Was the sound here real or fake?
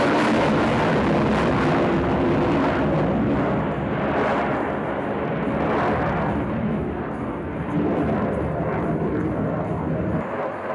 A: real